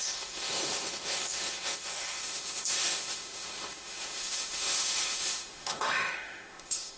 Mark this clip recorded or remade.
remade